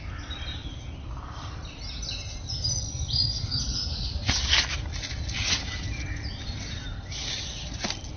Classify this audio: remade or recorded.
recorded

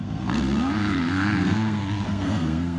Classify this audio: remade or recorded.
remade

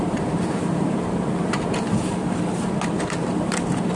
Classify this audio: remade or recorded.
remade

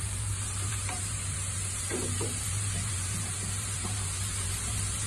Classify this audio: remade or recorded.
remade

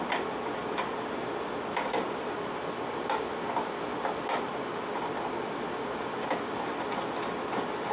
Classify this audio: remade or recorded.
recorded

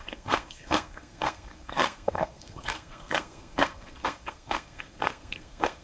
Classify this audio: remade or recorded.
remade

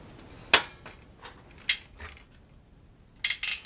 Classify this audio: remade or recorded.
recorded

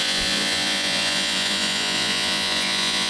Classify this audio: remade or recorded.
remade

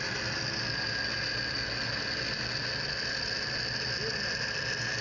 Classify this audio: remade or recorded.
recorded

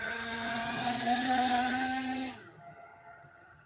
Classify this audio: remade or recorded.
remade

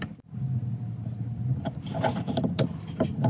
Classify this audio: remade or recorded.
recorded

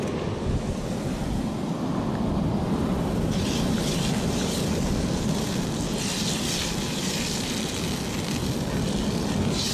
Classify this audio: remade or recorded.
recorded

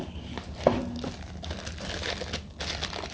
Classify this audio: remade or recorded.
recorded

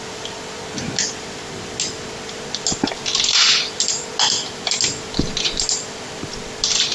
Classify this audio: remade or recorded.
recorded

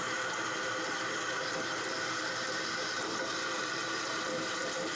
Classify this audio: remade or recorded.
remade